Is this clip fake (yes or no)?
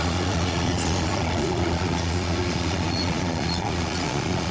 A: yes